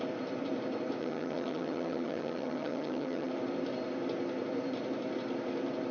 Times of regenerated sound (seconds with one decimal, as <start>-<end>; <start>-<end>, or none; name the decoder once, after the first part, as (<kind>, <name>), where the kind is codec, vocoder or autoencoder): 1.0-3.3 (vocoder, HiFi-GAN)